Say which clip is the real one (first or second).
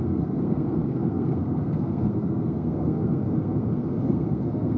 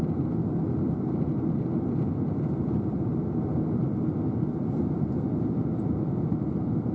second